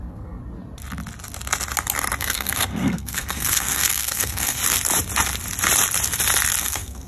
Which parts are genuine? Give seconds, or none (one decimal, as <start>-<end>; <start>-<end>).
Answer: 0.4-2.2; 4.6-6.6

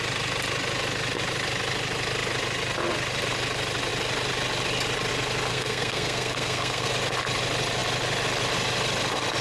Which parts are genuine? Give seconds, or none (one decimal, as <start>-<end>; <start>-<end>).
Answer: 0.0-5.5; 6.9-9.4

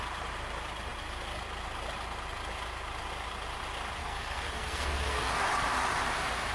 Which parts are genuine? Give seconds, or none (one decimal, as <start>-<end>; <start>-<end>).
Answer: 0.0-4.0; 5.3-6.5

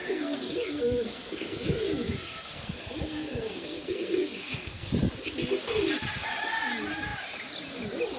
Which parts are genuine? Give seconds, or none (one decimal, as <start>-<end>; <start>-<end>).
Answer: 4.9-8.2

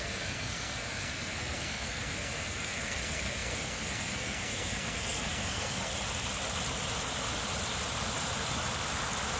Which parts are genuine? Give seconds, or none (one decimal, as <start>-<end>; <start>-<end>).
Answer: 5.9-9.4

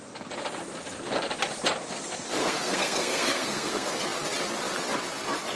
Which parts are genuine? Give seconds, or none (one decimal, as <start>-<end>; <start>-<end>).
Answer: 0.0-2.4; 3.9-5.6

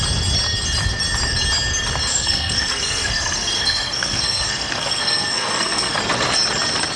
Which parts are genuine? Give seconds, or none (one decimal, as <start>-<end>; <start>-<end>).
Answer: 0.0-2.1; 6.0-7.0

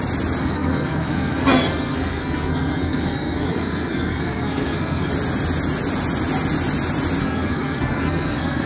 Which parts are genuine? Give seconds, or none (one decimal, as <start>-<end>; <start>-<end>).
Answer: 0.0-0.4; 5.1-7.2